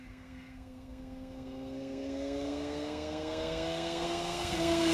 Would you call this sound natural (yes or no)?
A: no